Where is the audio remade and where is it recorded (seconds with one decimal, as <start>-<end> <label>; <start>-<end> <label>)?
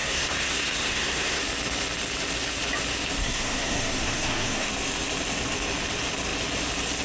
0.0-1.4 remade; 1.4-3.2 recorded; 3.2-4.7 remade; 4.7-7.0 recorded